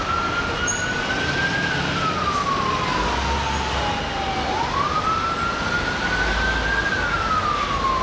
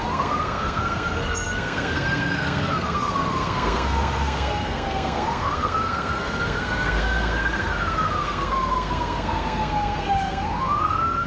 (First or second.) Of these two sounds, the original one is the first